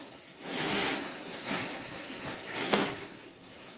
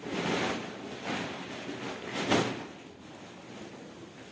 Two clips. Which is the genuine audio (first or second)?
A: second